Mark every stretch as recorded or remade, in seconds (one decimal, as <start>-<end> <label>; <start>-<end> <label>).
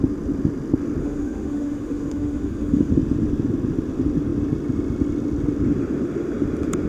0.0-1.0 recorded; 1.0-2.9 remade; 2.9-6.9 recorded